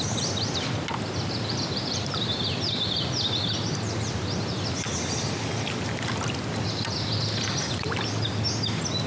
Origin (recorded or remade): recorded